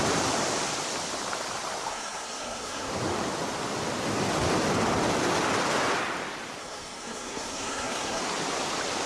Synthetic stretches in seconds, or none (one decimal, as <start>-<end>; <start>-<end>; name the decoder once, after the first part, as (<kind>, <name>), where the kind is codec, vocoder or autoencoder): 1.9-2.9 (codec, SNAC); 6.6-8.2